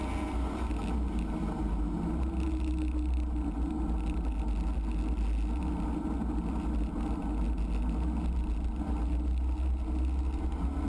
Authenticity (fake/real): real